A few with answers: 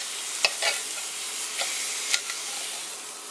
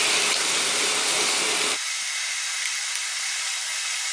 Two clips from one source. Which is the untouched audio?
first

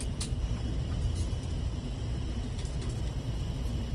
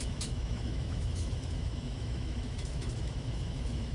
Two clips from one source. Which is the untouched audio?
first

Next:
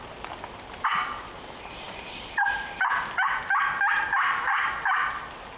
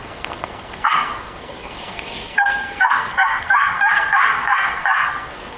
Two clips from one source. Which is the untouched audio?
first